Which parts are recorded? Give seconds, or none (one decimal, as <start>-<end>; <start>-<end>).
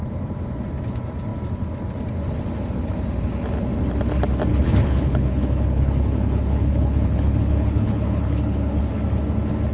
0.0-4.5; 8.9-9.7